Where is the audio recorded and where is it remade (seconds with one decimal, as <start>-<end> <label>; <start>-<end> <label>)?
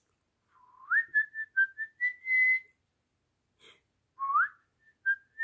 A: 0.0-5.4 recorded